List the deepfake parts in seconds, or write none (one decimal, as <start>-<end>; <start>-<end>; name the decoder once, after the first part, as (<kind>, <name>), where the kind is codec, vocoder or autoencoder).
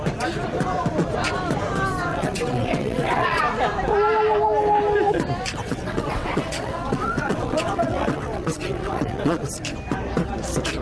2.1-3.4 (vocoder, WaveNeXt); 5.6-9.5